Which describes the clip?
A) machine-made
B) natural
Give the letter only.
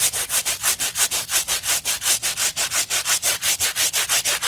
B